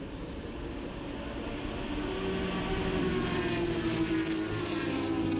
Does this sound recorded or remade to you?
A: recorded